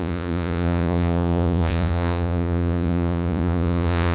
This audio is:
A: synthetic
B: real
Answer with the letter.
A